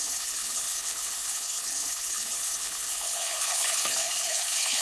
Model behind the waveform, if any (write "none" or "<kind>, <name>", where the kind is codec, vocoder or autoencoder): codec, HILCodec